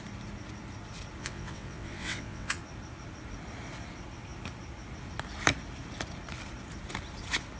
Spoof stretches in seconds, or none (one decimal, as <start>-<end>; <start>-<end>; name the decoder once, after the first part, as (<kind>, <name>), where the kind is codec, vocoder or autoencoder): 1.2-2.6 (vocoder, WaveNeXt)